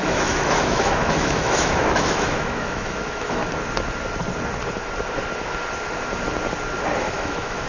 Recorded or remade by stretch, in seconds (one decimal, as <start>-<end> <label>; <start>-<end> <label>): 0.0-3.4 remade; 3.4-7.0 recorded; 7.0-7.7 remade